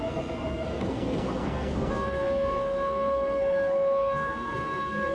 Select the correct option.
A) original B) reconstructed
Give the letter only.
B